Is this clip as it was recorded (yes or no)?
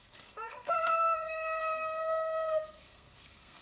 no